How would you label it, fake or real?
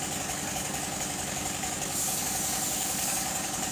fake